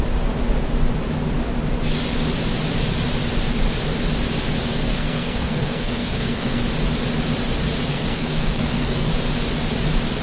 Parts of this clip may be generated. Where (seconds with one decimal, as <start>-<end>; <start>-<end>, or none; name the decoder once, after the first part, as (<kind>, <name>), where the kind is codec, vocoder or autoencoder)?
4.9-6.6 (codec, SNAC); 7.9-9.1